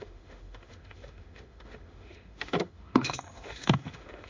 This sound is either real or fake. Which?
fake